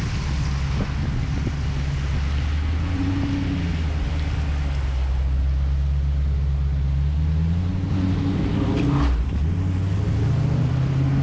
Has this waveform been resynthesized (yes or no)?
no